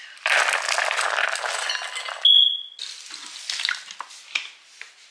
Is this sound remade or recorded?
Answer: recorded